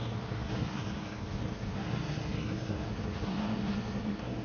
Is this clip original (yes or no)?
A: no